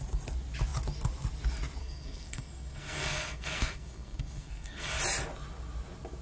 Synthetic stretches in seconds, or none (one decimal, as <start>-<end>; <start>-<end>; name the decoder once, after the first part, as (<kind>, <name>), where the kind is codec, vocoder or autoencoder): 1.8-4.9 (codec, SNAC)